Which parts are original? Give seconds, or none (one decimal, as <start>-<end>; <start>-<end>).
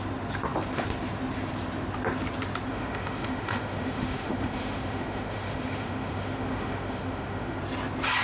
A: 0.0-2.7; 7.6-8.2